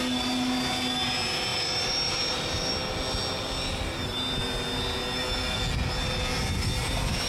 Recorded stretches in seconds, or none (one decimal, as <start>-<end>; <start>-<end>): 0.0-1.5; 2.7-7.3

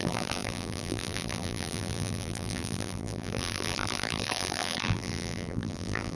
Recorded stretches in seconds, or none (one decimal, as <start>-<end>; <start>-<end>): none

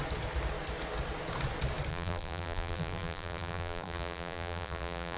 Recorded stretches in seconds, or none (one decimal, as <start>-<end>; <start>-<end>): 0.0-1.9

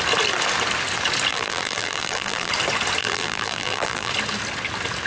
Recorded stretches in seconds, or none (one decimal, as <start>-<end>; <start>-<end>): 0.0-1.3; 2.5-3.0; 4.1-5.1

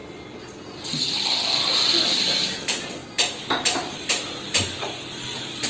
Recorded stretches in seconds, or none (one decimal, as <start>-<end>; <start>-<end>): 0.0-2.1; 3.0-4.8

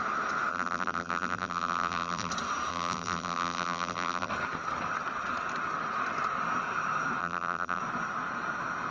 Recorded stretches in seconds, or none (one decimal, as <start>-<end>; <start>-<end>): 0.0-0.5; 2.3-2.7; 4.3-7.2; 7.8-8.9